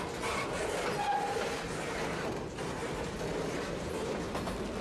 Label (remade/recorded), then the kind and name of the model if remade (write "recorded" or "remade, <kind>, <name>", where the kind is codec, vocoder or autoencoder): recorded